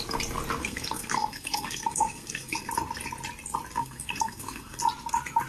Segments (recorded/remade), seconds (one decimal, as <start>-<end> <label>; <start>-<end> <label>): 0.0-0.6 recorded; 0.6-2.7 remade; 2.7-3.8 recorded; 3.8-4.8 remade; 4.8-5.5 recorded